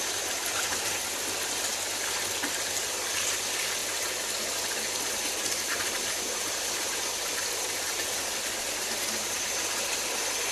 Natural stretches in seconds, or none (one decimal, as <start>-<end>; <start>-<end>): 0.0-10.5

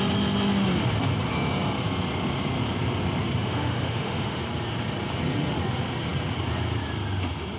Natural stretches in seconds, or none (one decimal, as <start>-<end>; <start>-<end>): 0.0-3.4; 4.4-7.6

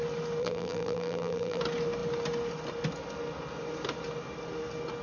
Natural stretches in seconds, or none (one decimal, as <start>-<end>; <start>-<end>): 0.0-0.4; 1.6-5.0

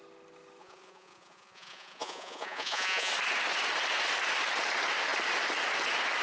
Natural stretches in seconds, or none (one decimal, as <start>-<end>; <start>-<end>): 0.0-0.6; 3.1-6.2

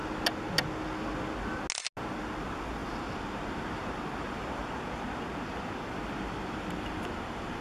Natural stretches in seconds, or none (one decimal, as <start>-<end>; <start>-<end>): 0.0-2.4; 2.8-3.5; 4.6-5.9

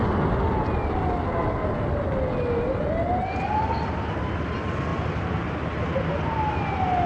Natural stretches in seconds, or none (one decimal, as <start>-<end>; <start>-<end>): 0.0-7.1

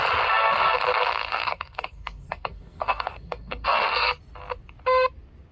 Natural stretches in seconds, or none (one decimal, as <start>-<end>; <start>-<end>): 0.0-1.3; 4.2-5.5